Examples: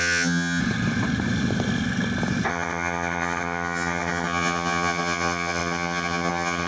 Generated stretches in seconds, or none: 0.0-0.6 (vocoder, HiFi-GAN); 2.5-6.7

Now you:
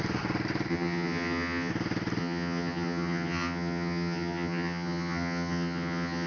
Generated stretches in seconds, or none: 0.7-1.7 (vocoder, HiFi-GAN); 2.2-6.3

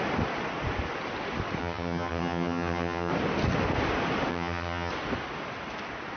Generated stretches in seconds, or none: 1.6-3.1 (vocoder, HiFi-GAN); 4.3-4.9

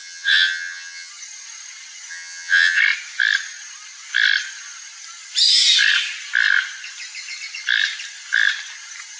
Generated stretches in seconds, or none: 0.0-1.1 (vocoder, HiFi-GAN); 2.1-2.8

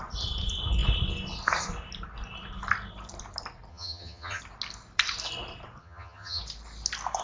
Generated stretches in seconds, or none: 3.7-4.4 (vocoder, HiFi-GAN); 5.8-6.4

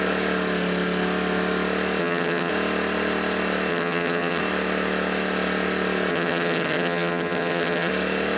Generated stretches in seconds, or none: 2.0-2.5 (vocoder, HiFi-GAN); 3.7-4.4; 6.1-7.9

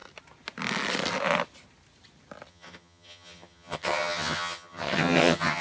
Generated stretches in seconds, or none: 2.5-5.6 (vocoder, HiFi-GAN)

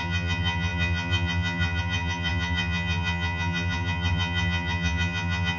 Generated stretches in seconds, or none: 0.0-5.6 (vocoder, HiFi-GAN)